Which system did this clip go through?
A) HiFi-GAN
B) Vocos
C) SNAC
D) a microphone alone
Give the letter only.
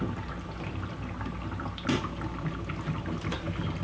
D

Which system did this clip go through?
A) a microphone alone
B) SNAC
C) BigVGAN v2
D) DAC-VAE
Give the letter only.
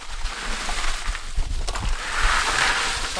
A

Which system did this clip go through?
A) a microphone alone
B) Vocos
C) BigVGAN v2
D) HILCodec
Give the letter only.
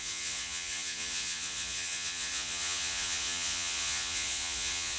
B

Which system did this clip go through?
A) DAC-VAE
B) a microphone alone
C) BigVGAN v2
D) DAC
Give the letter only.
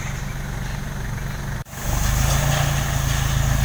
B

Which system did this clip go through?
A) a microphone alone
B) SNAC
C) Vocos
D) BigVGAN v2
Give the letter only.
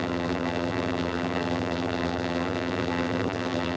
D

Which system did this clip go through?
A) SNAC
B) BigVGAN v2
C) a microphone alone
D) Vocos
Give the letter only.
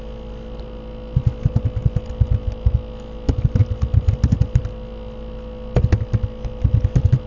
C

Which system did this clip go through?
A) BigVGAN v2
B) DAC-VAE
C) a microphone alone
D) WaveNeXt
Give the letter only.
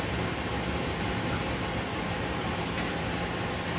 A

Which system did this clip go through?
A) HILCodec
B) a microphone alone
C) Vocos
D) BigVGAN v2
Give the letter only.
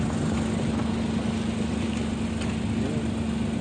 B